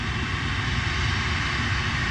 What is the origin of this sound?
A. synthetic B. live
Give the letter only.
B